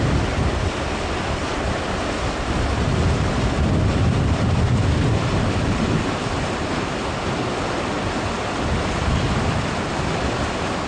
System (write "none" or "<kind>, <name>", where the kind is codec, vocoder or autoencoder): vocoder, BigVGAN v2